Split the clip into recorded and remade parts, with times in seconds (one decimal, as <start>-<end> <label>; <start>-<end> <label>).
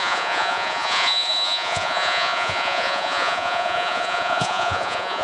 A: 0.0-5.2 remade